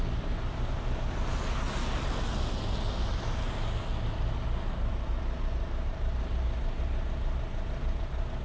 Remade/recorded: recorded